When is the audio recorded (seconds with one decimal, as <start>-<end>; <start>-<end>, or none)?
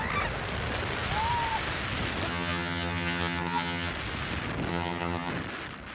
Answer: 0.0-2.3; 3.9-4.7; 5.3-5.9